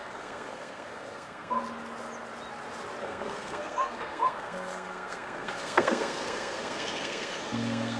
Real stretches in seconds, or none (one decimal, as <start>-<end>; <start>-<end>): 1.6-3.0